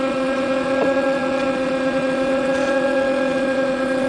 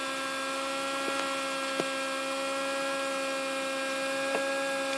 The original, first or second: second